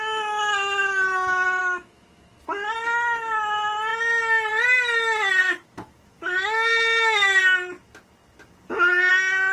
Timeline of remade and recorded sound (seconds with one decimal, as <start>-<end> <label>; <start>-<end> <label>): 0.0-1.6 recorded; 1.6-2.4 remade; 2.4-5.4 recorded; 5.4-7.4 remade; 7.4-9.5 recorded